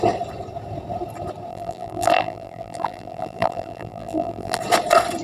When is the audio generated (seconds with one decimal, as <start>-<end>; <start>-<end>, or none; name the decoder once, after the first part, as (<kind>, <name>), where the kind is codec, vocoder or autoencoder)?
1.5-4.6 (vocoder, BigVGAN v2)